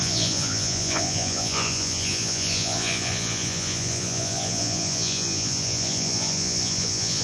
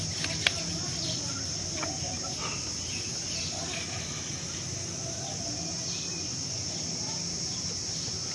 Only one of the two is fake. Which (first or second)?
first